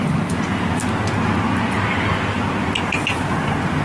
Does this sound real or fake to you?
real